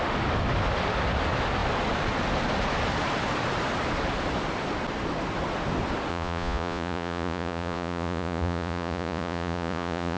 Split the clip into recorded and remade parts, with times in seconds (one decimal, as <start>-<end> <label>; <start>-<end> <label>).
0.0-6.1 recorded; 6.1-10.2 remade